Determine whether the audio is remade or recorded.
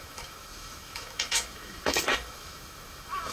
remade